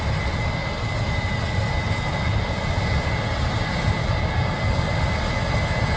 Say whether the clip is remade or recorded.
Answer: recorded